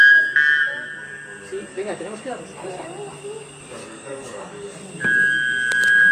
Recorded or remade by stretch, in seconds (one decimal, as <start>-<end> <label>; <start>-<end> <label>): 0.0-1.7 recorded; 1.7-2.4 remade; 2.4-3.8 recorded; 3.8-4.8 remade; 4.8-6.1 recorded